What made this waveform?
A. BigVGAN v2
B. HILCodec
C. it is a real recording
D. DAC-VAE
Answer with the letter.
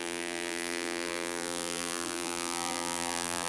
A